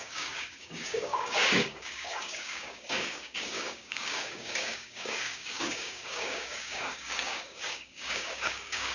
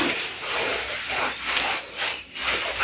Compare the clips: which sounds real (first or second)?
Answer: second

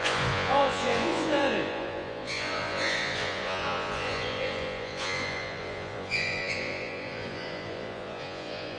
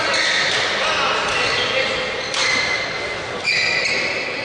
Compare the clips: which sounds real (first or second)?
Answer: second